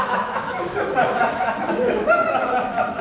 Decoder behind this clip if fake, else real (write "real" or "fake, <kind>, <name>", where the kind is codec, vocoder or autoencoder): fake, autoencoder, DAC-VAE